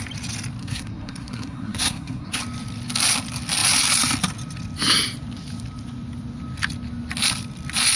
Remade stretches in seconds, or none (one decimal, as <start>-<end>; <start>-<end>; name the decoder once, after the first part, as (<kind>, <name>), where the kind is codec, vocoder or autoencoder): 0.6-2.4 (codec, SNAC)